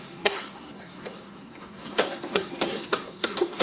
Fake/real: fake